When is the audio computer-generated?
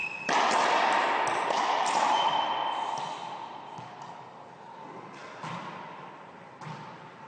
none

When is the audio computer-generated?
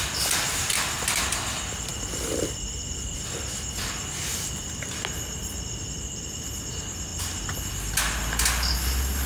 4.3-5.0; 7.1-7.6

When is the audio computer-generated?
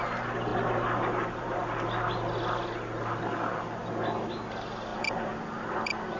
0.5-1.6; 4.9-6.2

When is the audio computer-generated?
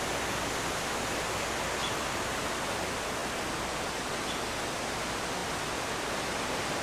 1.8-2.5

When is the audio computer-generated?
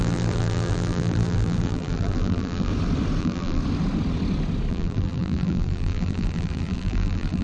0.0-2.7; 3.2-3.6; 4.7-7.4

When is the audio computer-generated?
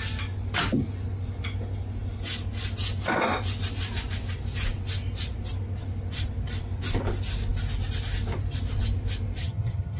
9.4-10.0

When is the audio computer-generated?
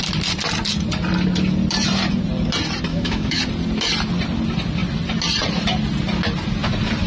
2.9-3.4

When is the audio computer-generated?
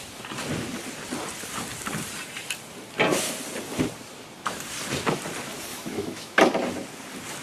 5.7-6.4